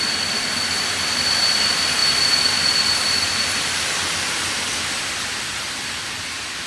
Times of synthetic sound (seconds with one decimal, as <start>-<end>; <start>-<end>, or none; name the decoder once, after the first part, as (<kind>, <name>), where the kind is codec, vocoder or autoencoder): none